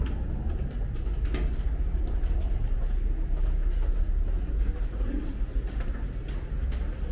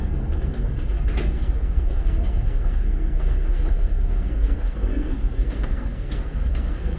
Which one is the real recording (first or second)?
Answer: first